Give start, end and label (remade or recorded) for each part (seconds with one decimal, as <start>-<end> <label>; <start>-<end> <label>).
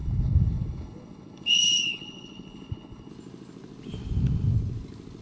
0.0-3.1 remade; 3.1-5.2 recorded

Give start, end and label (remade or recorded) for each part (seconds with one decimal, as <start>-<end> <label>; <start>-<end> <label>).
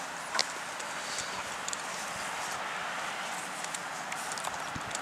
0.0-5.0 recorded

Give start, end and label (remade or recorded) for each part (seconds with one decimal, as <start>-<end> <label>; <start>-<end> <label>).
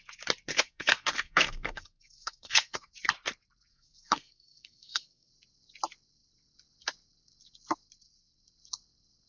0.0-0.5 recorded; 0.5-2.9 remade; 2.9-3.7 recorded; 3.7-5.3 remade; 5.3-9.3 recorded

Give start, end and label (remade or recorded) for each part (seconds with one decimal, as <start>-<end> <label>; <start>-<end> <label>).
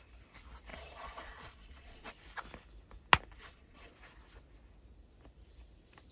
0.0-0.7 recorded; 0.7-2.1 remade; 2.1-3.4 recorded; 3.4-3.9 remade; 3.9-6.1 recorded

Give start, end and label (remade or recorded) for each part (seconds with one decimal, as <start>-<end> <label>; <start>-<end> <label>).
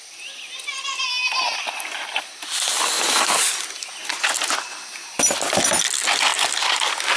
0.0-7.2 recorded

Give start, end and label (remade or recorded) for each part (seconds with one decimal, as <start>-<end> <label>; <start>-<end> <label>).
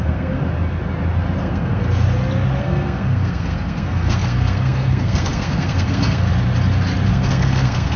0.0-0.4 remade; 0.4-1.4 recorded; 1.4-1.8 remade; 1.8-2.6 recorded; 2.6-6.3 remade; 6.3-7.1 recorded; 7.1-8.0 remade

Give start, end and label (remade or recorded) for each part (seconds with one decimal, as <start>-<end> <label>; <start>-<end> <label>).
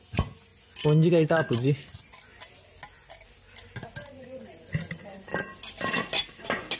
0.0-6.8 recorded